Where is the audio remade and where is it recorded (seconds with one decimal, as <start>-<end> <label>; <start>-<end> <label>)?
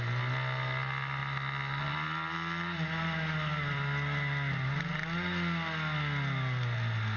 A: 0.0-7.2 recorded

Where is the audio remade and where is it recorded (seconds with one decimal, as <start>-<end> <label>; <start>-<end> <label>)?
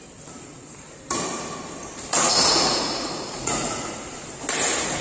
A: 0.0-2.1 recorded; 2.1-3.8 remade; 3.8-5.0 recorded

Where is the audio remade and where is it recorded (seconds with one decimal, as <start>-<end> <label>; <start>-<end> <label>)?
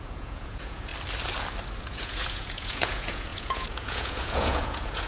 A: 0.0-0.9 remade; 0.9-1.8 recorded; 1.8-5.1 remade